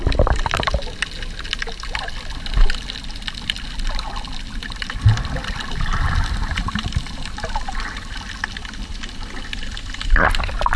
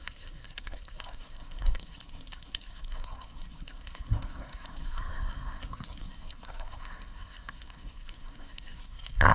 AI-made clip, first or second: second